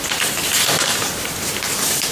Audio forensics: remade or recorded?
recorded